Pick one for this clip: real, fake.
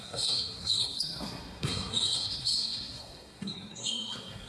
fake